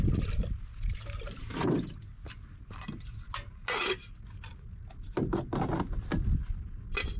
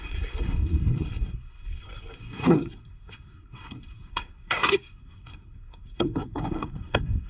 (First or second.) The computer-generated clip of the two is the second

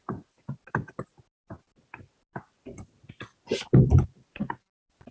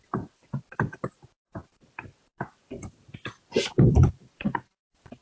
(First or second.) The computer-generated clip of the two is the second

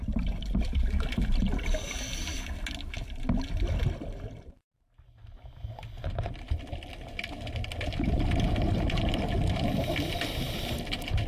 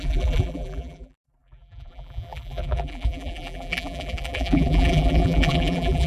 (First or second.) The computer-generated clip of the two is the second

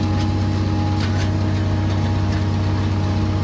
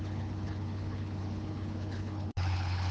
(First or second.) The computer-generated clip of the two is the second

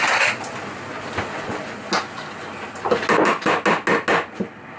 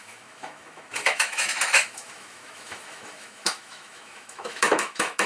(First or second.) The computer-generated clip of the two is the second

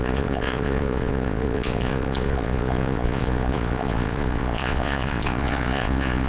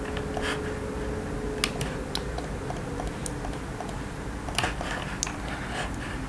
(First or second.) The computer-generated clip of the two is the first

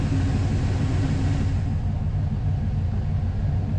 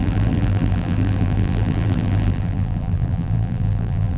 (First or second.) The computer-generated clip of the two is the second